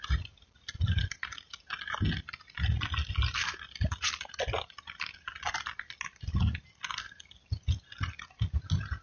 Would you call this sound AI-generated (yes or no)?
no